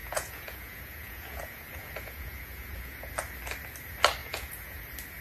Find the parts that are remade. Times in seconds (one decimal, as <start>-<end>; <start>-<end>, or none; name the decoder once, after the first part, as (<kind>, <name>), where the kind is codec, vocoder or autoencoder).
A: 0.0-3.1 (vocoder, Vocos); 4.2-4.8